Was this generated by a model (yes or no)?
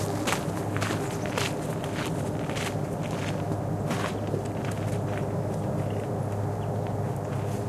no